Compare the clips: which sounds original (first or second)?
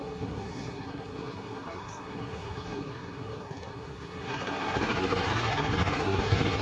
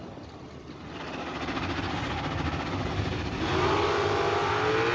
second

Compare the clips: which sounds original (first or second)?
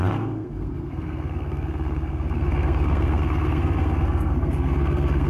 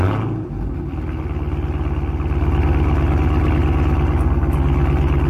second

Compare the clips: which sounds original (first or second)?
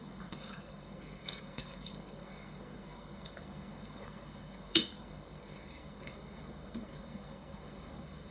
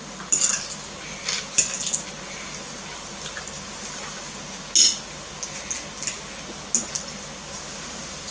second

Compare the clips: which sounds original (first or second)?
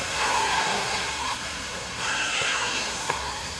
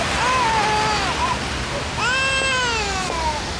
second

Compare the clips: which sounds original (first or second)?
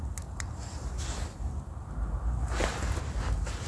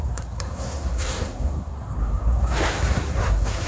first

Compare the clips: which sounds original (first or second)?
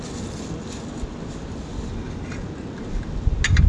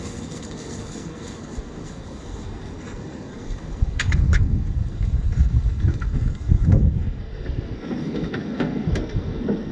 first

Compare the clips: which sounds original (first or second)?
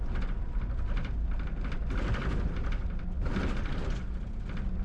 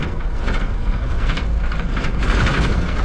first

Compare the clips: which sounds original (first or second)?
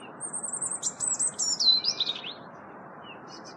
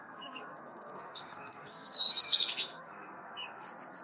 first